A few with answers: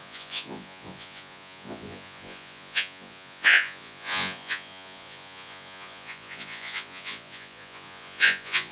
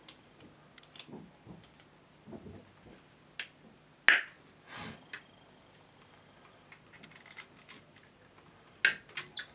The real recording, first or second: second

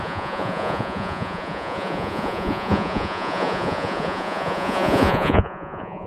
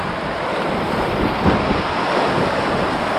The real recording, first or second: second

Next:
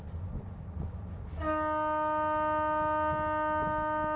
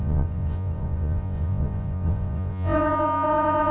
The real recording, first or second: first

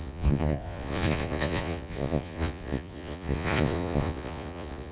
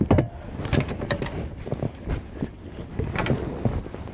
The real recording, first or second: second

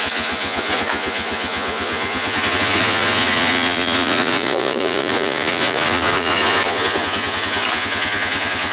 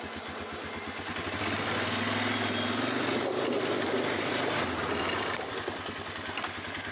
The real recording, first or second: second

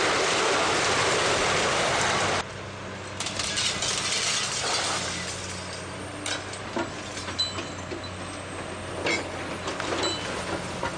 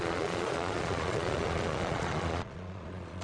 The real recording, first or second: first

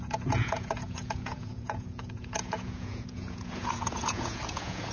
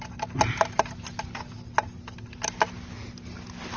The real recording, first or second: second